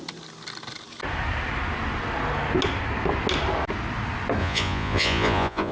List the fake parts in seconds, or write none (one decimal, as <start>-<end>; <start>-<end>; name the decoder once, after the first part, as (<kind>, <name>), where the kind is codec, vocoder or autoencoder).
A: 4.4-5.7 (vocoder, Vocos)